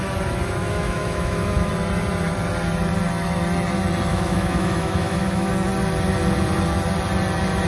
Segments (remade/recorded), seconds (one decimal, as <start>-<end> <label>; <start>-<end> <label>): 0.0-0.6 recorded; 0.6-1.7 remade; 1.7-4.1 recorded; 4.1-5.5 remade; 5.5-7.7 recorded